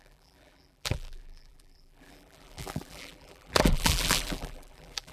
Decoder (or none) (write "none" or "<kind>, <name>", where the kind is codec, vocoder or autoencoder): vocoder, BigVGAN v2